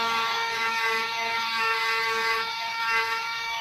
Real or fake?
fake